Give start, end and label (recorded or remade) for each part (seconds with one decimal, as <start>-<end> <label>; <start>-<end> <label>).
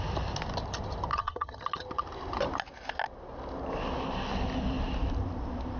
0.0-1.1 recorded; 1.1-1.6 remade; 1.6-5.8 recorded